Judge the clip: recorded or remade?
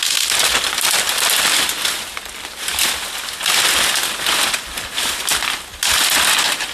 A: recorded